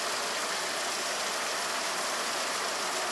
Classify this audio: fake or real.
real